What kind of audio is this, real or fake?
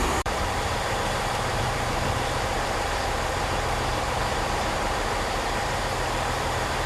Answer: fake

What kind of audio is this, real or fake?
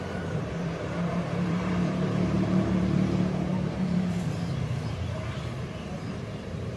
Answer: fake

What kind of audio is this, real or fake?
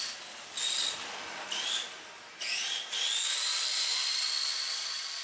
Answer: real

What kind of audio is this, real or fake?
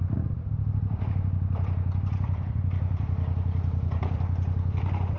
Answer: fake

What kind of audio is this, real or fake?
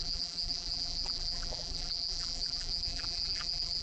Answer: fake